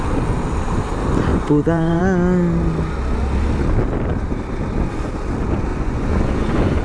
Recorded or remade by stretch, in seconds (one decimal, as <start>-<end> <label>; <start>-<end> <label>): 0.0-1.3 recorded; 1.3-2.0 remade; 2.0-5.7 recorded; 5.7-6.8 remade